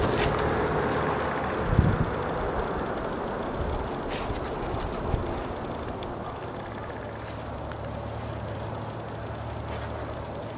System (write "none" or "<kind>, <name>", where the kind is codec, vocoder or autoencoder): none